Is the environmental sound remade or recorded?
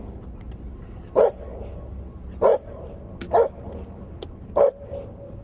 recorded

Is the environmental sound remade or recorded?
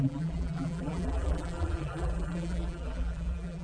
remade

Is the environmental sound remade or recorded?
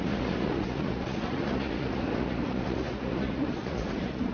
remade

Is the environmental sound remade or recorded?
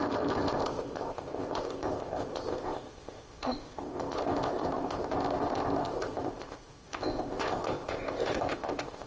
remade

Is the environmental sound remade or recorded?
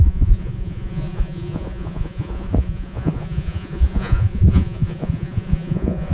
remade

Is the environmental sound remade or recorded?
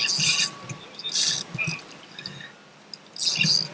recorded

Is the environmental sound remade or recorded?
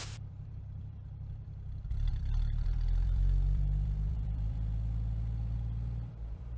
remade